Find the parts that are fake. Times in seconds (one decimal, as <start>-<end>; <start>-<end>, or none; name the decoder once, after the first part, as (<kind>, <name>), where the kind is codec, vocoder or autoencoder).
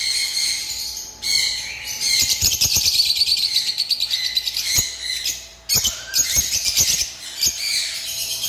0.6-3.7 (vocoder, BigVGAN v2); 5.5-6.7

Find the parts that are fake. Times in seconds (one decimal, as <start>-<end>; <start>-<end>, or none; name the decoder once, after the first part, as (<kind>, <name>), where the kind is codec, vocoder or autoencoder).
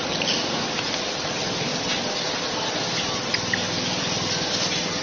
0.0-1.7 (vocoder, BigVGAN v2)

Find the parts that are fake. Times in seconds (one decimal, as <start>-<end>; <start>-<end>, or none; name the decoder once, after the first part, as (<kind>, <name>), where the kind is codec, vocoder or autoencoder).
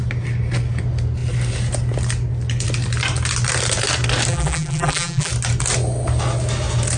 4.3-5.3 (vocoder, BigVGAN v2)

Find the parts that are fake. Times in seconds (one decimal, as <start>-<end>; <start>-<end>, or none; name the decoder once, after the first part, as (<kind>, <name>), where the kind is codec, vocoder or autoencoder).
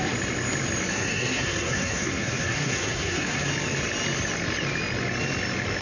0.9-3.5 (codec, SNAC)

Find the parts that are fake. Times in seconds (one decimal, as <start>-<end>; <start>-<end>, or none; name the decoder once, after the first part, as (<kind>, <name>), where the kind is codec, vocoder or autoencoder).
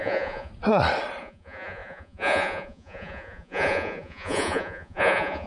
0.0-0.5 (vocoder, Vocos); 1.2-5.5